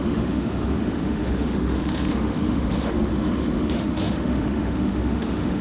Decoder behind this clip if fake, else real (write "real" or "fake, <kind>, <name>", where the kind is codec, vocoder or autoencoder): fake, autoencoder, DAC-VAE